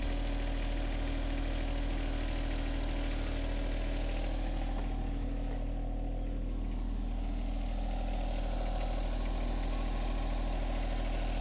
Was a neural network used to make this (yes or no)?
no